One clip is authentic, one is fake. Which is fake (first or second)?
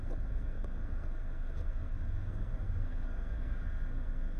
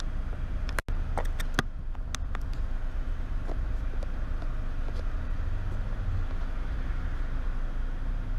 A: first